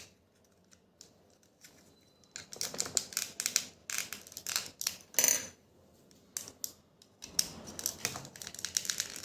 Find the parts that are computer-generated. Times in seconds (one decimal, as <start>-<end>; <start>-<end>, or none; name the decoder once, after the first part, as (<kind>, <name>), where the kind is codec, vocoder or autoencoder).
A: none